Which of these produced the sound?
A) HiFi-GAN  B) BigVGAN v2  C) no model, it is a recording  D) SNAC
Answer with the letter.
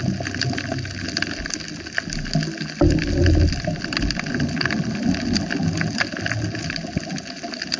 C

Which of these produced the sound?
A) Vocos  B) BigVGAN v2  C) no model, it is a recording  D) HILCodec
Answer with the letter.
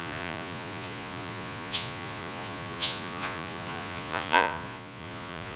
A